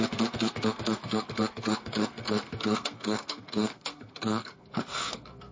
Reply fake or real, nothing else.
fake